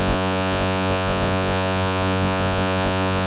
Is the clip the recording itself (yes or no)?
no